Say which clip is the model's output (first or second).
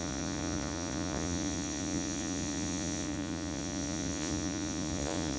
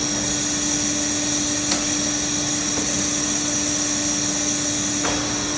first